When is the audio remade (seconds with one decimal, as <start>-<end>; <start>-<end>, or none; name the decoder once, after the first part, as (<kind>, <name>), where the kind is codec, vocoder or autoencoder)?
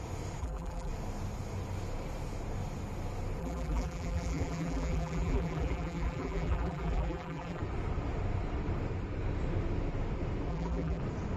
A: 0.4-0.9 (vocoder, BigVGAN v2); 3.4-7.6; 10.5-11.0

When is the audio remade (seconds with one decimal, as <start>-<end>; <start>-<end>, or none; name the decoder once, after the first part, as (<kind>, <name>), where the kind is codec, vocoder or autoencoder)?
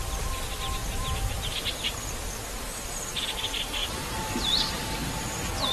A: 3.8-5.2 (vocoder, BigVGAN v2)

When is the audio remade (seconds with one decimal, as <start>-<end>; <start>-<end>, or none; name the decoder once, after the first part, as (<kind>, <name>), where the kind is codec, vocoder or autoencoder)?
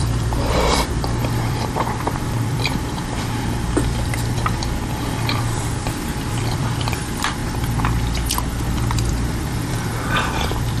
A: 0.0-7.4 (vocoder, BigVGAN v2); 9.1-10.8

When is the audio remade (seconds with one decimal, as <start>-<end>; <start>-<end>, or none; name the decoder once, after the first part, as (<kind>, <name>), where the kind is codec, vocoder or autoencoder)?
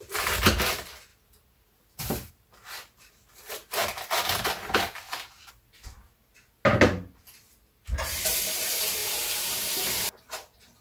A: 0.0-1.1 (vocoder, BigVGAN v2); 2.3-3.8; 7.3-10.8